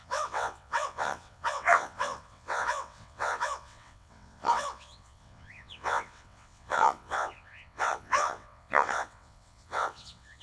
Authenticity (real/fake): fake